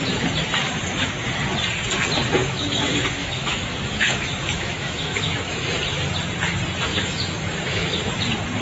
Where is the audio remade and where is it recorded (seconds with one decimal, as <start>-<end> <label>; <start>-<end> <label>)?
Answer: 0.0-2.4 recorded; 2.4-5.7 remade; 5.7-6.9 recorded; 6.9-8.0 remade; 8.0-8.6 recorded